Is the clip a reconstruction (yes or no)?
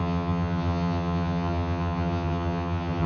yes